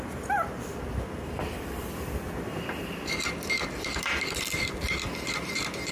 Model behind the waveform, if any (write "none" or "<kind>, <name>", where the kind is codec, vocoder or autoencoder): vocoder, BigVGAN v2